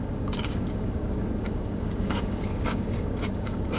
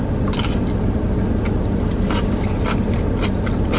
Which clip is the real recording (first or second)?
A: second